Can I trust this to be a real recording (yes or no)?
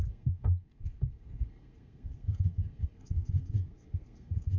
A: no